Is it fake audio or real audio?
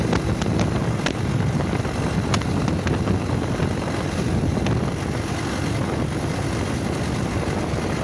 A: real